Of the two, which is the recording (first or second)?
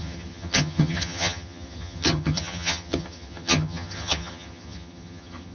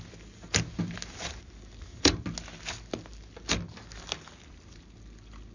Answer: second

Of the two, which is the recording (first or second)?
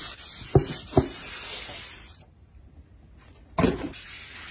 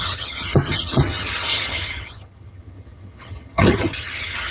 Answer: first